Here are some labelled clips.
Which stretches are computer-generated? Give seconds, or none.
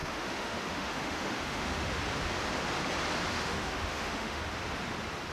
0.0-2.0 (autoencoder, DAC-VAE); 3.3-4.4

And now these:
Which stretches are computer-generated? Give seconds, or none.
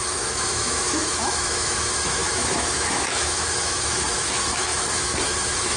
0.0-5.8 (autoencoder, DAC-VAE)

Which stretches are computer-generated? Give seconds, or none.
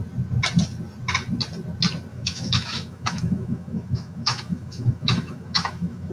2.1-6.1 (autoencoder, DAC-VAE)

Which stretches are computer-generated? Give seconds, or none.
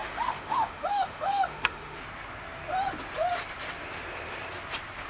0.0-2.0 (autoencoder, DAC-VAE)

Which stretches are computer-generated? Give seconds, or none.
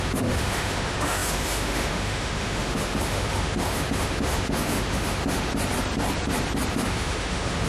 0.0-5.5 (autoencoder, DAC-VAE); 6.7-7.7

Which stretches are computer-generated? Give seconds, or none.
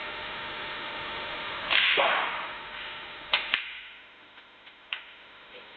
0.0-5.8 (autoencoder, DAC-VAE)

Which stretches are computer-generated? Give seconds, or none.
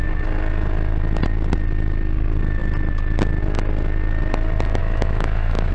4.8-5.7 (autoencoder, DAC-VAE)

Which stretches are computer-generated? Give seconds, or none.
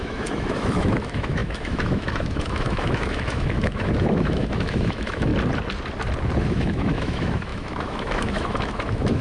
0.0-5.3 (autoencoder, DAC-VAE); 6.4-9.2